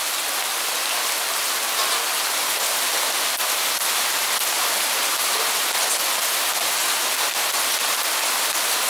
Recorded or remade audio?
recorded